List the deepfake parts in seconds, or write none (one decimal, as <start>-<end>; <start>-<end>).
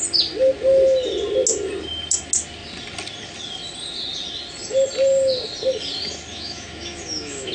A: 6.3-7.5